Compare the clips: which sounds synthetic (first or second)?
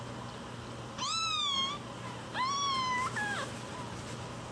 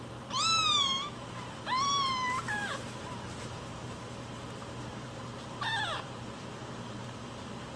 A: second